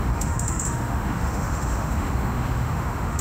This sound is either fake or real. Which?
fake